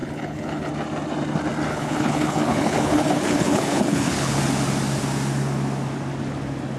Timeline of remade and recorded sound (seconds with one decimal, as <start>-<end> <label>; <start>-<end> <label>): 0.0-0.7 remade; 0.7-1.7 recorded; 1.7-4.4 remade; 4.4-6.8 recorded